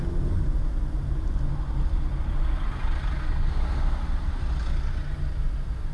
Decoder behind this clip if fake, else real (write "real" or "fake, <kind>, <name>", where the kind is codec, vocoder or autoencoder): real